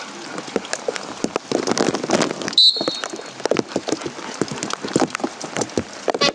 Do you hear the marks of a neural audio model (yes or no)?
no